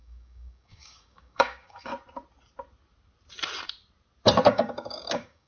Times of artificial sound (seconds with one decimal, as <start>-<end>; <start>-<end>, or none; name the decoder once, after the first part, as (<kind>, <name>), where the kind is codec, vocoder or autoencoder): 0.0-1.9 (codec, DAC); 4.5-5.5